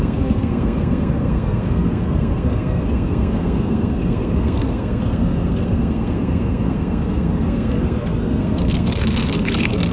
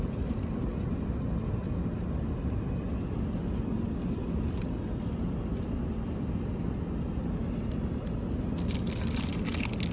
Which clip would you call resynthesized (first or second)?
first